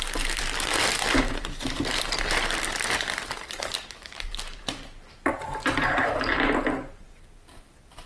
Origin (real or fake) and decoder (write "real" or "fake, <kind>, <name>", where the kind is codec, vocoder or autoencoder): fake, vocoder, BigVGAN v2